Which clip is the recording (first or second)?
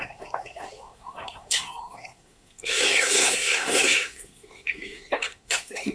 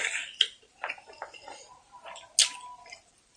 second